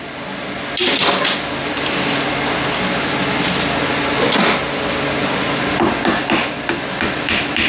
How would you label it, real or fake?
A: real